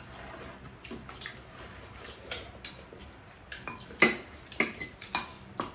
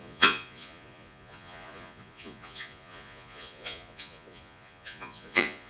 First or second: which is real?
first